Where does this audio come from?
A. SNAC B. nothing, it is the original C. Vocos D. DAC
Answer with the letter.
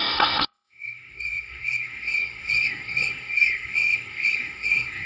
A